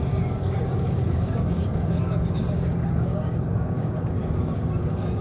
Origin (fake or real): fake